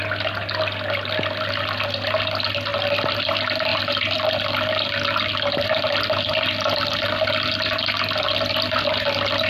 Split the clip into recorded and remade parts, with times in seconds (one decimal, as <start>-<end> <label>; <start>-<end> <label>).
0.0-9.5 recorded